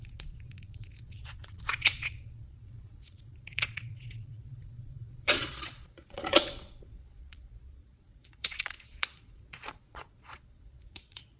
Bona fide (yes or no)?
no